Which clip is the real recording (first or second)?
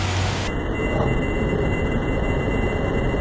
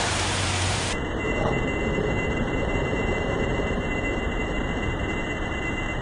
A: first